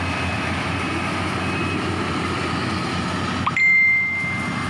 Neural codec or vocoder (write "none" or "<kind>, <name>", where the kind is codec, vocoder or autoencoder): none